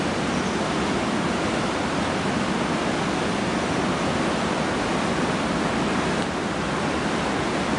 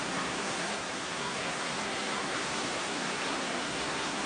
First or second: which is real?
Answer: first